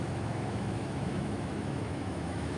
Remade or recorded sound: remade